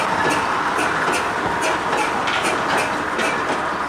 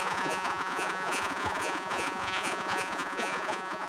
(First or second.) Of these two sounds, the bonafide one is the first